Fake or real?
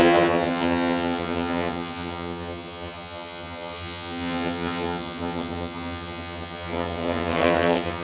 fake